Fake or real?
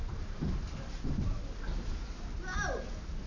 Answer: real